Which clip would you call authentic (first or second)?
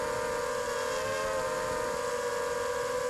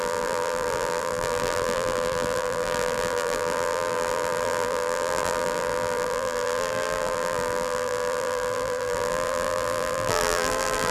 first